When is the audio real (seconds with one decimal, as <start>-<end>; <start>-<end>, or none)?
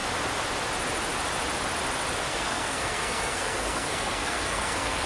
0.0-2.3